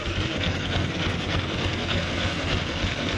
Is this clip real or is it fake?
fake